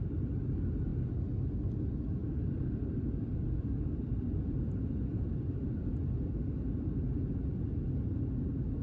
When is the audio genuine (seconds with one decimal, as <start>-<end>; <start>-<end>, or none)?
0.0-2.2; 7.0-8.8